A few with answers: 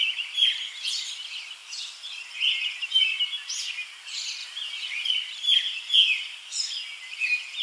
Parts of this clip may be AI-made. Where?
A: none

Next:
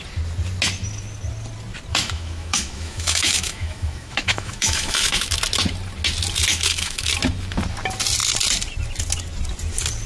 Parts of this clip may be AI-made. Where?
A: 1.9-5.3; 6.5-7.1

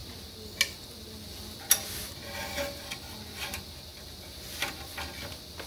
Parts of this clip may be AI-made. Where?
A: none

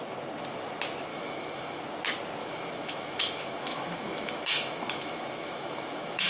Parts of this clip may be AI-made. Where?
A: 1.1-1.8; 2.4-6.3

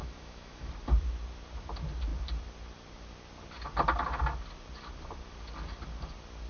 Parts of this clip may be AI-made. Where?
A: 0.0-0.7

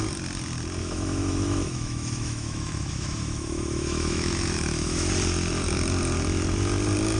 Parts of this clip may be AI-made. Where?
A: 0.8-5.1

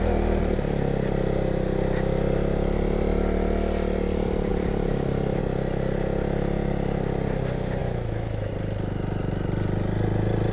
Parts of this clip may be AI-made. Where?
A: 7.8-8.5

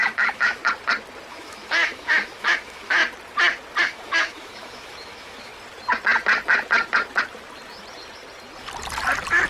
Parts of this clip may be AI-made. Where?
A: 0.0-0.6; 1.3-3.0; 3.8-5.5